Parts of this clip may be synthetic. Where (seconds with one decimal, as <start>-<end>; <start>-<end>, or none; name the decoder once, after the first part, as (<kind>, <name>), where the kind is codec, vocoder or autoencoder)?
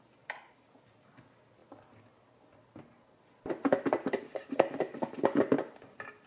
none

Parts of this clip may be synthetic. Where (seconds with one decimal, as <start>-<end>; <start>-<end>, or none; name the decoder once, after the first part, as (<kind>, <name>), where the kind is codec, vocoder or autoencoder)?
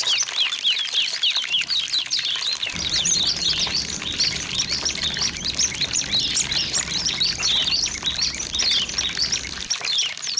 none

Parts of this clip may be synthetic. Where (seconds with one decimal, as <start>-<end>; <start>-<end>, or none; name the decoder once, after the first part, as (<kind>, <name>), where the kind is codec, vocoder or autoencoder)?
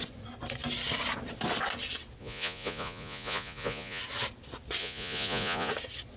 2.2-4.0 (vocoder, Vocos); 4.8-5.7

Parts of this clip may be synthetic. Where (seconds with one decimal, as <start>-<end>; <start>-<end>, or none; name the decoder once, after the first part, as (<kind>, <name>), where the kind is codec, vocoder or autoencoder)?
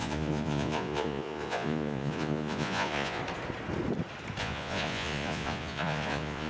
0.0-3.2 (vocoder, Vocos); 4.4-6.5